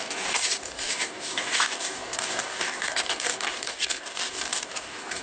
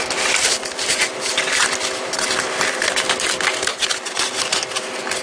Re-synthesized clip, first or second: first